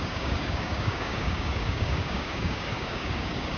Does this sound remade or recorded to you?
remade